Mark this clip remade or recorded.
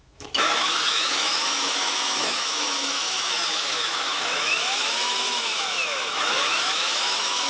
remade